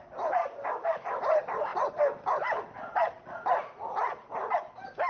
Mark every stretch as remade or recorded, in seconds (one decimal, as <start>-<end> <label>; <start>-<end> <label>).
0.0-0.4 recorded; 0.4-1.2 remade; 1.2-5.1 recorded